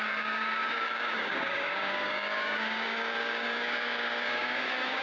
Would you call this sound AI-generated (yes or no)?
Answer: yes